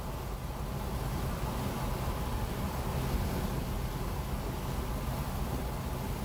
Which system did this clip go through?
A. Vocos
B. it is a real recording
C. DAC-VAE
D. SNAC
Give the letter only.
B